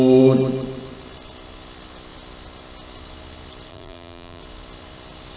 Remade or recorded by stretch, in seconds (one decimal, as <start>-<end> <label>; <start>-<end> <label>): 0.0-3.7 recorded; 3.7-4.4 remade; 4.4-5.4 recorded